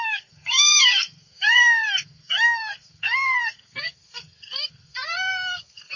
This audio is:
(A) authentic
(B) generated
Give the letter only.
B